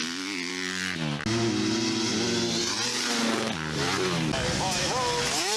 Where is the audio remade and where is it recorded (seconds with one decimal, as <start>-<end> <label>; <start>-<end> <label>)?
0.0-5.6 recorded